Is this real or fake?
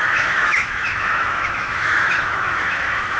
fake